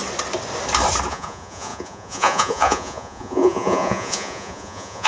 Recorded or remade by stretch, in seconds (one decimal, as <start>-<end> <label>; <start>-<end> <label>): 0.0-1.1 recorded; 1.1-5.1 remade